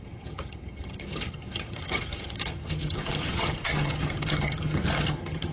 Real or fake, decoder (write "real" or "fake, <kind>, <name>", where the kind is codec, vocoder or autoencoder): fake, vocoder, HiFi-GAN